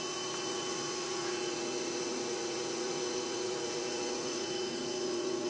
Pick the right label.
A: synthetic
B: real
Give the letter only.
A